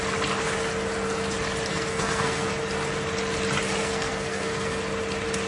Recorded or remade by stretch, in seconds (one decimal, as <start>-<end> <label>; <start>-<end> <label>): 0.0-1.7 recorded; 1.7-2.5 remade; 2.5-3.8 recorded; 3.8-4.8 remade; 4.8-5.5 recorded